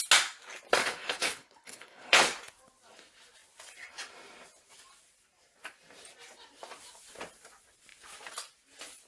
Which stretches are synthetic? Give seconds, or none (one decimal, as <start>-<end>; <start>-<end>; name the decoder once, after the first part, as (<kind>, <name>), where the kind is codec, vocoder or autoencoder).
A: 0.8-2.2 (codec, HILCodec)